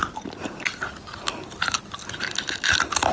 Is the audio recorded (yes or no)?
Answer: yes